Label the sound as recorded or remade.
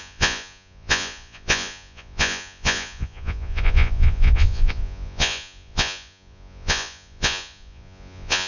remade